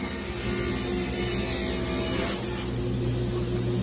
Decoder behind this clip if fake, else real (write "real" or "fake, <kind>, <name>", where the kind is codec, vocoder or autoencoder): real